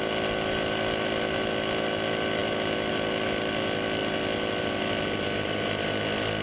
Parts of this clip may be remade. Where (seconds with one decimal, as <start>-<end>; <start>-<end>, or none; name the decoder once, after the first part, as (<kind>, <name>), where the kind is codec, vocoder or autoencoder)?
none